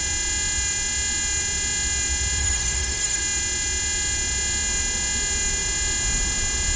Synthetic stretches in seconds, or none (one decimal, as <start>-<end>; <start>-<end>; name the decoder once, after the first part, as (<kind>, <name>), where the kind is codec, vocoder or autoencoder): 2.4-3.2 (autoencoder, DAC-VAE)